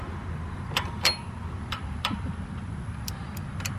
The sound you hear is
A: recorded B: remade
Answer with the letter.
B